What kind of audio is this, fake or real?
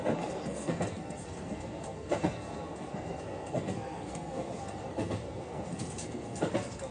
fake